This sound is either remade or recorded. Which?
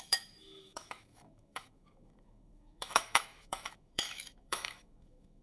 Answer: remade